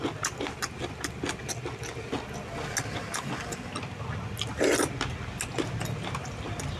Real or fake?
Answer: real